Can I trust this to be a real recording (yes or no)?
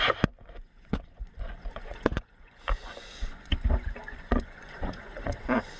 no